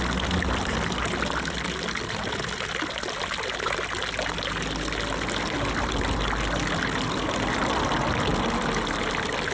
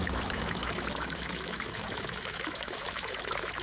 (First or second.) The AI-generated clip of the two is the second